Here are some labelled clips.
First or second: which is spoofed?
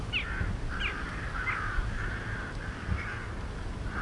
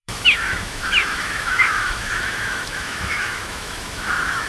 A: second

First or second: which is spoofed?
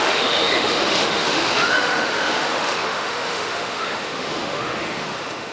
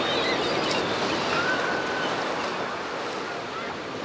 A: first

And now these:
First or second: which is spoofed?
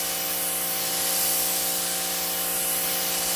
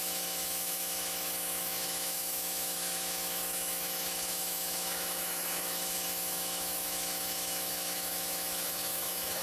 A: second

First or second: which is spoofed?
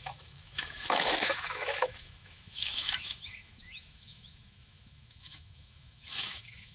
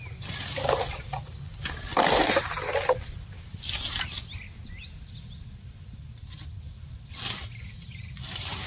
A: first